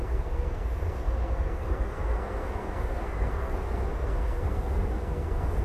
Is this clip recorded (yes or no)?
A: no